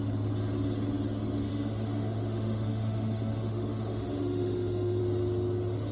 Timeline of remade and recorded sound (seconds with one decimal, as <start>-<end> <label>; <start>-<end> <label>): 0.0-1.5 recorded; 1.5-5.0 remade; 5.0-5.9 recorded